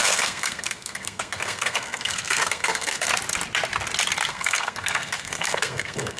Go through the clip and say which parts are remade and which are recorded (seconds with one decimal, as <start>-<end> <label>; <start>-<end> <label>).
0.0-3.1 remade; 3.1-4.3 recorded; 4.3-6.2 remade